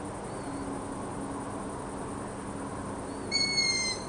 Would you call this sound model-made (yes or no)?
no